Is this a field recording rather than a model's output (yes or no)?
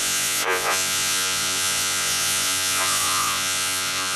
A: no